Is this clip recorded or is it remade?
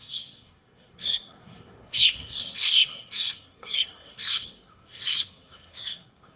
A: remade